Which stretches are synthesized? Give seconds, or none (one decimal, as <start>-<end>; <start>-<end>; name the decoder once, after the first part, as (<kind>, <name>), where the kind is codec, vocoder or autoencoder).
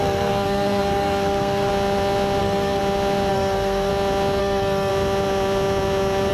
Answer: 0.0-1.7 (codec, SNAC); 2.4-2.8; 3.3-3.9; 4.4-4.9